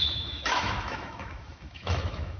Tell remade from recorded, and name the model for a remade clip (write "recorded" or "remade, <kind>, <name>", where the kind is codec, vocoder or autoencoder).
remade, autoencoder, DAC-VAE